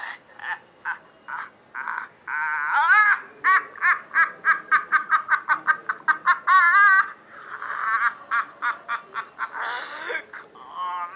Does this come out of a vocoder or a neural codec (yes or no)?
no